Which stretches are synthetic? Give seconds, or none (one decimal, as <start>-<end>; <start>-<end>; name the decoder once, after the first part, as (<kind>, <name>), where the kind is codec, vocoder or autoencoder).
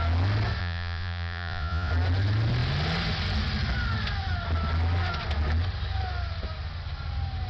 0.6-1.9 (vocoder, Vocos)